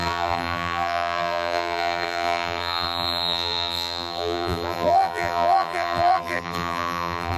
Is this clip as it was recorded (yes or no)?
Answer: no